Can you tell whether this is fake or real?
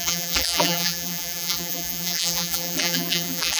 fake